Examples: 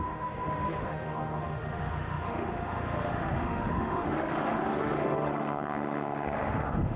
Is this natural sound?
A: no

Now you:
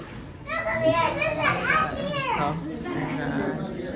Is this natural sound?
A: yes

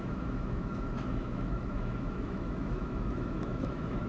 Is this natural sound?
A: no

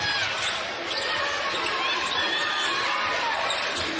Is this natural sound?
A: yes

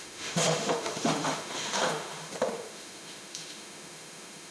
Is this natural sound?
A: no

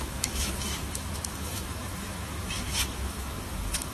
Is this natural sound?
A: no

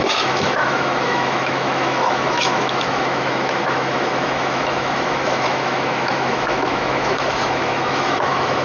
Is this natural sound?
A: no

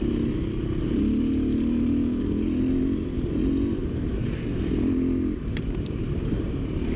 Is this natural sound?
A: yes